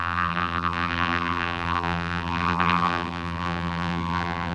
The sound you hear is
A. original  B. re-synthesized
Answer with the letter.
B